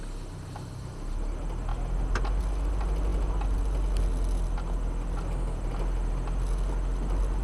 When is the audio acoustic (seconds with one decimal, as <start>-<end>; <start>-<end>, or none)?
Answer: 0.0-7.4